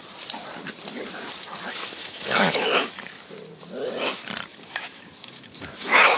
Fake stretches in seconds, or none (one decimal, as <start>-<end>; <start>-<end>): 1.8-3.3; 4.5-6.2